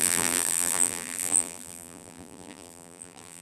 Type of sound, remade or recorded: remade